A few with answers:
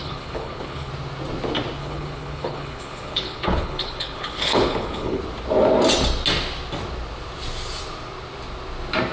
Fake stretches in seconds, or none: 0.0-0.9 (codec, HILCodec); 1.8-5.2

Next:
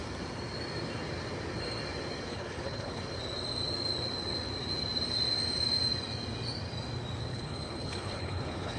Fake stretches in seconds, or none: 2.3-3.0 (codec, HILCodec); 7.3-8.8